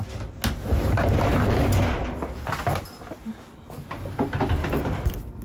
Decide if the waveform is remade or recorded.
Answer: recorded